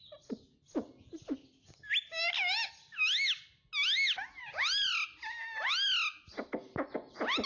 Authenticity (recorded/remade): recorded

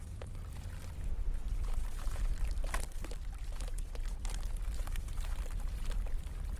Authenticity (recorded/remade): recorded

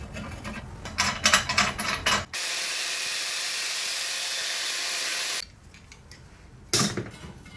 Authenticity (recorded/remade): recorded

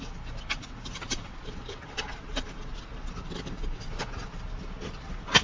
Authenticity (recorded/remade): remade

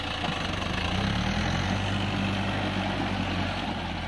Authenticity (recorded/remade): recorded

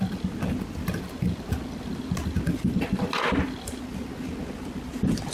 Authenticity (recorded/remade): recorded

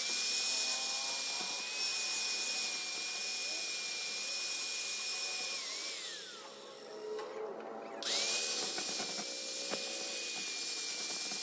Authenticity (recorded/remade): recorded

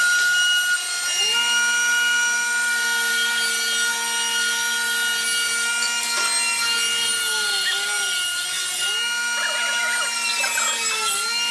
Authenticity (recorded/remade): recorded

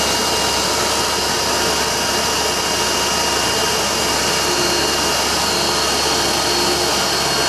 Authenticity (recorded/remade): recorded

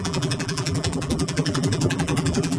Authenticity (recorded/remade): remade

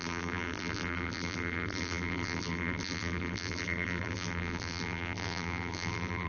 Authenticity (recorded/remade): remade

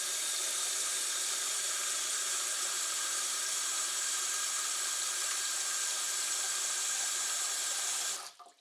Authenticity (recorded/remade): recorded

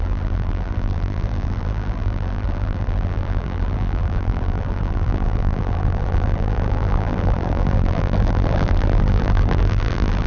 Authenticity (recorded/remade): remade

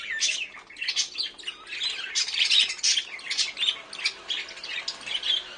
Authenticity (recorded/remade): recorded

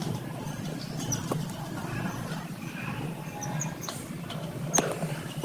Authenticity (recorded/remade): recorded